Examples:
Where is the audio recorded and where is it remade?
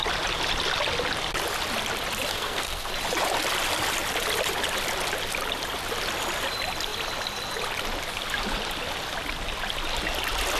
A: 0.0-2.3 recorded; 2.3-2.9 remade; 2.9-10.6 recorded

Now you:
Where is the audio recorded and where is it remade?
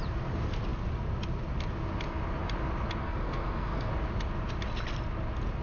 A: 0.0-3.0 recorded; 3.0-3.9 remade; 3.9-5.6 recorded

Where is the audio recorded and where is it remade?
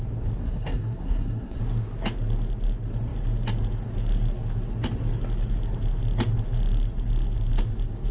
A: 0.0-0.4 recorded; 0.4-1.6 remade; 1.6-8.1 recorded